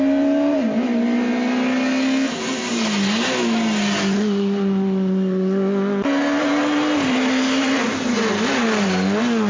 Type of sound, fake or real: real